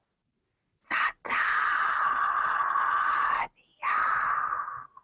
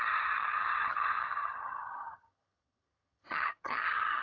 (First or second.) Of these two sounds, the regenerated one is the second